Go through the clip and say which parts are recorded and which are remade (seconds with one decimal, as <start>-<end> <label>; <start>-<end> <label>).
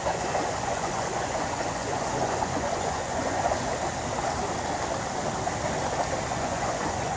0.0-3.7 remade; 3.7-6.3 recorded; 6.3-7.2 remade